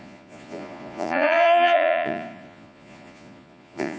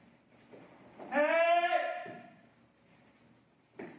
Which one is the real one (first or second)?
second